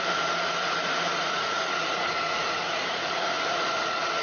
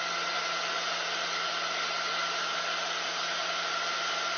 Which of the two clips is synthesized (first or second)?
first